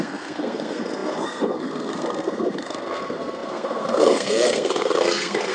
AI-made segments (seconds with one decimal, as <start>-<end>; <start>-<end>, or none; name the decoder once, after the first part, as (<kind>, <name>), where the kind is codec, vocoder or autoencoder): 0.0-5.5 (codec, SNAC)